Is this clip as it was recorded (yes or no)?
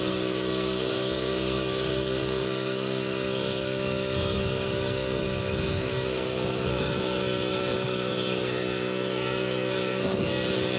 no